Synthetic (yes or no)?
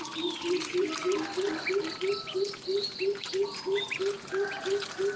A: no